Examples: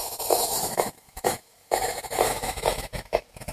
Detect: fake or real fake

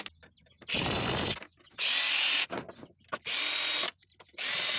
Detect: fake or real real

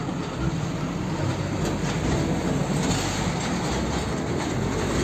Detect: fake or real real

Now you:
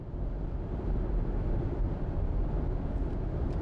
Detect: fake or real real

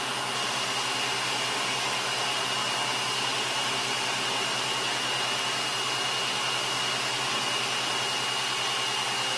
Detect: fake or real real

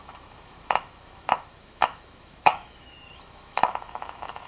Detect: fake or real fake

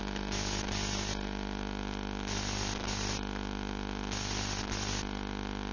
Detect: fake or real real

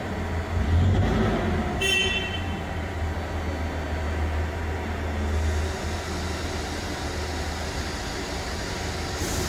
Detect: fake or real real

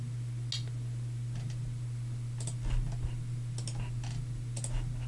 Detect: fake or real real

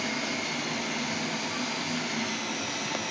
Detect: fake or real real